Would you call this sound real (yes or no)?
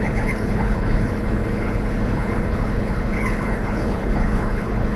no